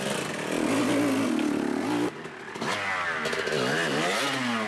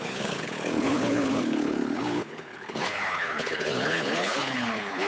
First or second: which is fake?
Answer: second